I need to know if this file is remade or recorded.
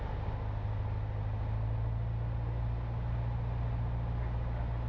recorded